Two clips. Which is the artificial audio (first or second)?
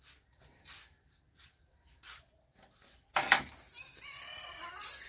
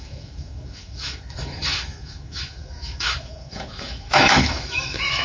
second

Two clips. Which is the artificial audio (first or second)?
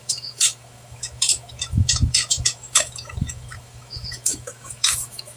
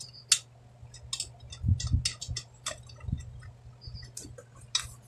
first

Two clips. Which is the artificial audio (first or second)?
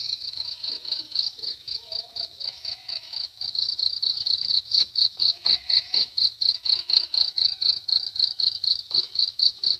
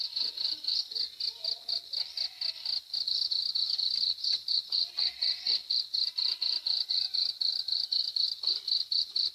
first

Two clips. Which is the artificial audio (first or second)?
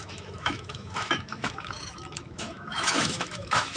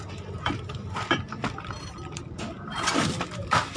first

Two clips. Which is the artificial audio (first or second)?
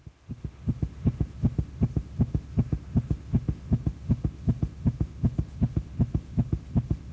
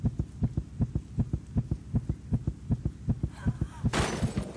first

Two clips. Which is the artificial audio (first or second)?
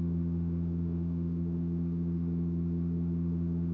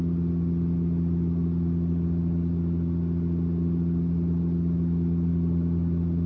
first